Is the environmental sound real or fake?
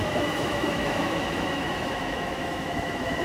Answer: fake